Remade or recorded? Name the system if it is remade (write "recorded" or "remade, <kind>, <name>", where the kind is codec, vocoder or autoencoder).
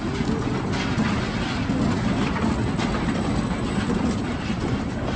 recorded